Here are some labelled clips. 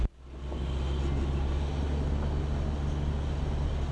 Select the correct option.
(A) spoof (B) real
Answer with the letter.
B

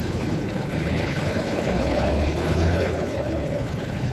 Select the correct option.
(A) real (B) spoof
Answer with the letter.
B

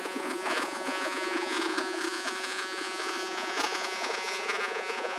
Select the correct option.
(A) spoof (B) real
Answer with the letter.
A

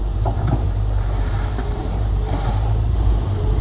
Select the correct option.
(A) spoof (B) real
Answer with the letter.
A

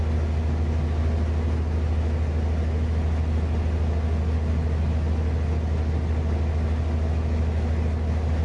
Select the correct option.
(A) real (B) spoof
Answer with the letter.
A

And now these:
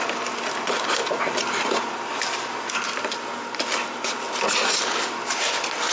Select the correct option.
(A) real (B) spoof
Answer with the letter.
A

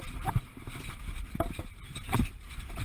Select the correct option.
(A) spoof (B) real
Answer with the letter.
A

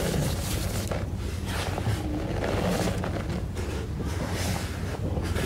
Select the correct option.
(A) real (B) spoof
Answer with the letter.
A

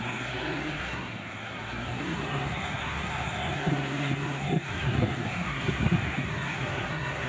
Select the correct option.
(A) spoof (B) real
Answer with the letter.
A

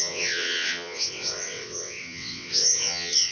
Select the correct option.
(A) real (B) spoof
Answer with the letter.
B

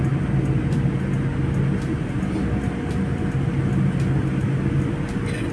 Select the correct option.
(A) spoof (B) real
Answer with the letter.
B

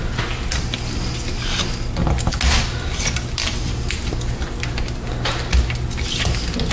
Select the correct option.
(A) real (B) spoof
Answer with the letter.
A